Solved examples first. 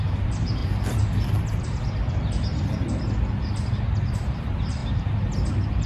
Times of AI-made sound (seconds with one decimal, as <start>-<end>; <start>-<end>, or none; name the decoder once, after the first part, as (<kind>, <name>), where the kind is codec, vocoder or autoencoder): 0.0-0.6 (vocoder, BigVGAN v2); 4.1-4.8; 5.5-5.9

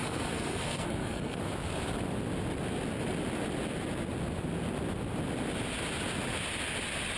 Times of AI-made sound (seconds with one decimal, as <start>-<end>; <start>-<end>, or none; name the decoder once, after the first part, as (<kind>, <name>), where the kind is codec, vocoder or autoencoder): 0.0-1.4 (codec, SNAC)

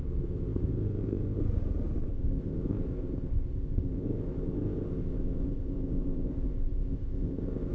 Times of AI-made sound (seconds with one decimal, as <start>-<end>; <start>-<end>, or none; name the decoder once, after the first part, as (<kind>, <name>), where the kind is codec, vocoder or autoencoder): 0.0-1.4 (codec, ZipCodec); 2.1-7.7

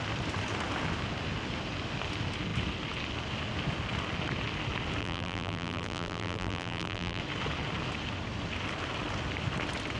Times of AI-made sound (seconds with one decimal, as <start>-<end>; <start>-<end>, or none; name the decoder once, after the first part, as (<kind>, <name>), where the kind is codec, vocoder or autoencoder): 5.0-7.2 (vocoder, BigVGAN v2)

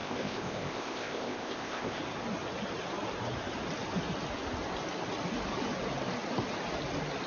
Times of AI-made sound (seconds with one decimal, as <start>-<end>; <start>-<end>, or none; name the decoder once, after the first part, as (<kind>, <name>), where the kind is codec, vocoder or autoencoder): 0.0-2.0 (codec, ZipCodec)

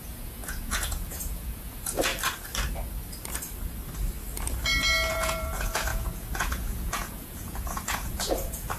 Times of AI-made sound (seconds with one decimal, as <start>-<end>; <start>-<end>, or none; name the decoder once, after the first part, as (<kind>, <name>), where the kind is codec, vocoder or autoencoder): 0.0-2.1 (vocoder, Vocos); 5.1-8.8

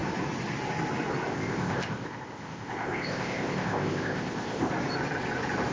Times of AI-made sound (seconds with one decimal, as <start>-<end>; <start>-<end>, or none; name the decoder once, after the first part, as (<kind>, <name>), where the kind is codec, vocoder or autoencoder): 1.3-4.7 (codec, ZipCodec)

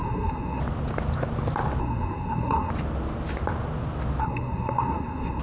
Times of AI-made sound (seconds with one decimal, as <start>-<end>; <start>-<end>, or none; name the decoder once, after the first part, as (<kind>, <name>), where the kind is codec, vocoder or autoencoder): 0.0-0.6 (codec, SNAC); 1.8-2.7; 4.2-5.4